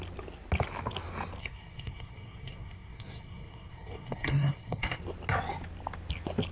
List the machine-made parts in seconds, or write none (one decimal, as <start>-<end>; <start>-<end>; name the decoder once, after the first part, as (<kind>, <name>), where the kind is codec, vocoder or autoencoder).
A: 1.4-5.0 (codec, SNAC)